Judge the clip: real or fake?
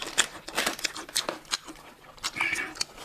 real